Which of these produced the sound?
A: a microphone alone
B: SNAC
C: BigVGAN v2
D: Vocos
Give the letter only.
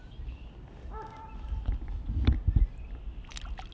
A